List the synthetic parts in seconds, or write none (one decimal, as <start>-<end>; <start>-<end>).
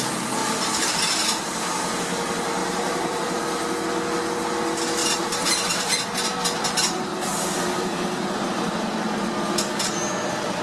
2.6-3.4; 5.0-5.9; 7.1-10.6